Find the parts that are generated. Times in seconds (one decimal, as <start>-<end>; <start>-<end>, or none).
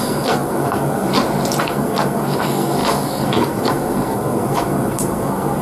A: 0.0-1.1; 1.6-5.6